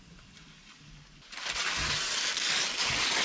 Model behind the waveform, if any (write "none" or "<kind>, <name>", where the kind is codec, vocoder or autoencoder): none